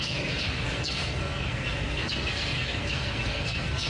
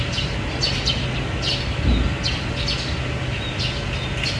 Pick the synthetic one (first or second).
first